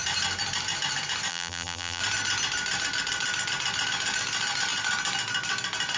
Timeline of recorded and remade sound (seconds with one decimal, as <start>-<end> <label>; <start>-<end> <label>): 0.0-1.3 recorded; 1.3-2.0 remade; 2.0-6.0 recorded